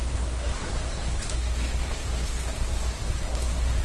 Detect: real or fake fake